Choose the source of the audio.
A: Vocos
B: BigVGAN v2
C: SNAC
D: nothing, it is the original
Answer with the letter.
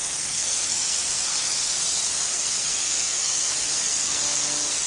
C